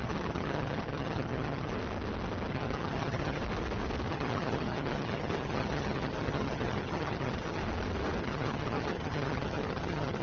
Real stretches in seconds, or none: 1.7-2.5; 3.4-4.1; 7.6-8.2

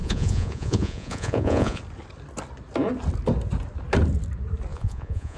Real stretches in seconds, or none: 1.8-4.7

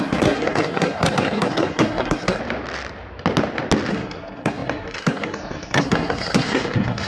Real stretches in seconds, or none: 2.4-3.9